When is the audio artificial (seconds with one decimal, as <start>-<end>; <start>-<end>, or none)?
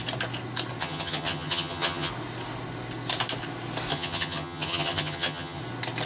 0.8-2.1; 3.9-5.6